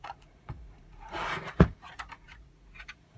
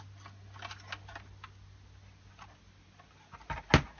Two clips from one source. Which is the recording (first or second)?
second